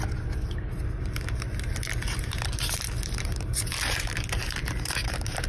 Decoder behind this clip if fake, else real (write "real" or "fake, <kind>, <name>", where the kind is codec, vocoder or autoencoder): fake, vocoder, BigVGAN v2